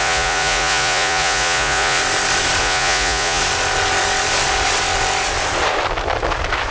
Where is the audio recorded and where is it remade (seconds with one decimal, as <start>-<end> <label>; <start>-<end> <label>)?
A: 0.0-2.0 remade; 2.0-2.6 recorded; 2.6-3.4 remade; 3.4-6.7 recorded